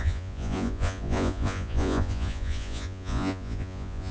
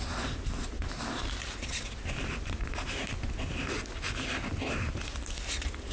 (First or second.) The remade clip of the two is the first